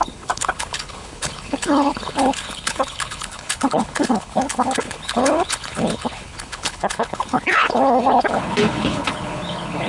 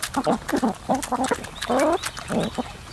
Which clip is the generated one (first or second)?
first